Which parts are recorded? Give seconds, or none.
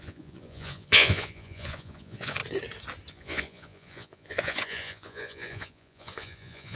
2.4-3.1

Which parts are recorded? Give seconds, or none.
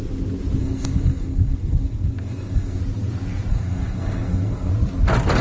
0.0-0.6; 2.8-3.5; 4.7-5.4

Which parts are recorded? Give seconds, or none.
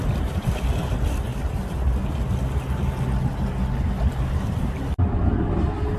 0.0-6.0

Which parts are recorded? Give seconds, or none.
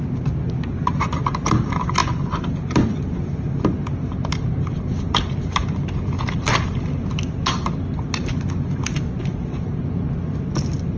0.0-11.0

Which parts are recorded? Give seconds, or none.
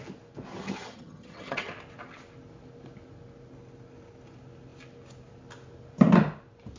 0.0-0.5; 1.7-6.8